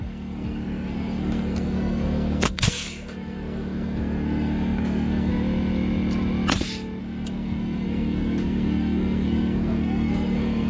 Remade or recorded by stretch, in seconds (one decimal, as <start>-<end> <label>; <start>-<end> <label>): 0.0-5.3 remade; 5.3-7.0 recorded; 7.0-10.7 remade